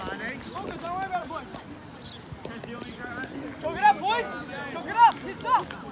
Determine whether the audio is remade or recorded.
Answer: recorded